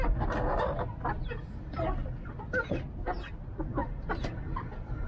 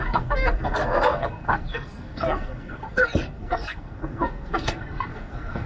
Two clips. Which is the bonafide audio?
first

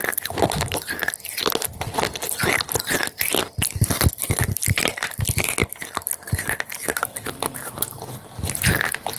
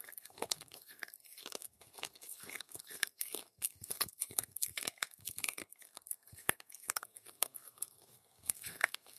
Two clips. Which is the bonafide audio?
first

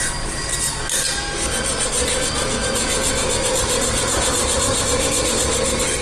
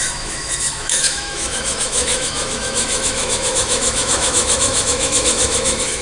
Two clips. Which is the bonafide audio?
first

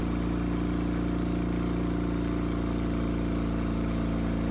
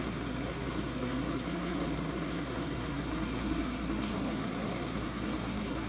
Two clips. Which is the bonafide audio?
first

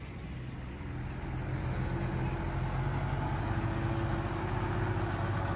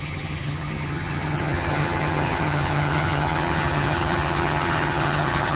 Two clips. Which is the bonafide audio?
first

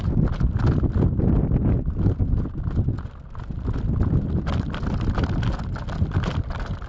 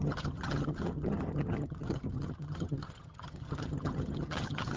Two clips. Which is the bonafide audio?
first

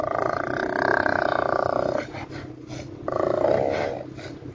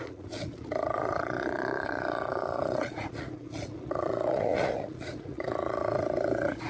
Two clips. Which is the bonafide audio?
first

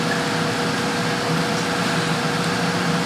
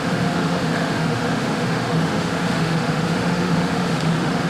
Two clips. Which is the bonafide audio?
first